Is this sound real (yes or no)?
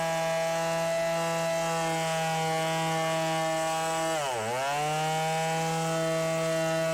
yes